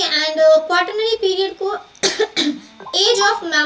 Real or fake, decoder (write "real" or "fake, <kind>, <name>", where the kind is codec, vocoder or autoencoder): real